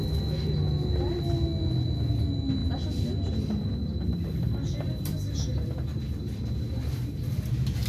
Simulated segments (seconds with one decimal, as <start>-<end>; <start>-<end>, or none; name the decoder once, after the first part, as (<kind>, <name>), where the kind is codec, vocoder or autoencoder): none

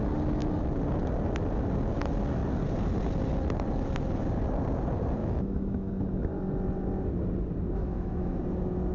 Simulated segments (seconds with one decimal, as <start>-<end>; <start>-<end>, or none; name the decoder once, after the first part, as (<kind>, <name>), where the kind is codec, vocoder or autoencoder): 5.2-5.9 (autoencoder, DAC-VAE); 7.8-8.4

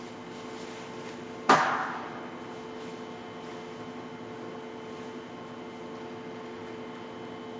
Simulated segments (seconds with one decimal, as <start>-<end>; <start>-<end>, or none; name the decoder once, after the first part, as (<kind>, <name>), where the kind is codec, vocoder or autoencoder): none

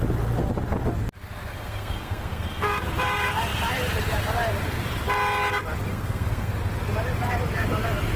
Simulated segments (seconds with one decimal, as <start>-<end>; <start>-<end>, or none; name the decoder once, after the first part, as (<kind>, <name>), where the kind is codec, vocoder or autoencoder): 1.5-2.7 (codec, SNAC); 5.9-6.5

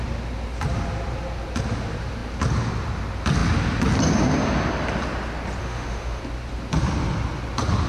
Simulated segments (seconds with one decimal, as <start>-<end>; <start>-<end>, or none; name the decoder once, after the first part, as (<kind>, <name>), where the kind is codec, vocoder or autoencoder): 5.6-6.2 (autoencoder, DAC-VAE)

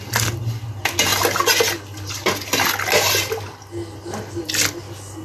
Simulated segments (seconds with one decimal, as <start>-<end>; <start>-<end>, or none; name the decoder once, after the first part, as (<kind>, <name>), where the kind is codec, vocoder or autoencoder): none

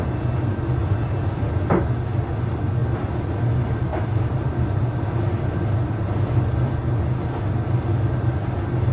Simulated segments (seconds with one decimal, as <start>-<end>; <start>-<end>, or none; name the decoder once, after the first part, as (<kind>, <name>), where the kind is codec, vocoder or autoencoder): 0.8-1.8 (vocoder, BigVGAN v2); 2.8-6.3

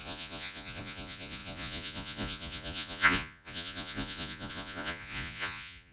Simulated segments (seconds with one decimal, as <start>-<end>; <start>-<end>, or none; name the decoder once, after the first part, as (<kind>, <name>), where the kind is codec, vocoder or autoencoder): 0.0-5.9 (vocoder, Vocos)